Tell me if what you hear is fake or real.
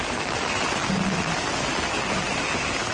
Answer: real